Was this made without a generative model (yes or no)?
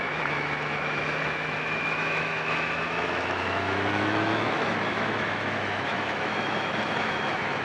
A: no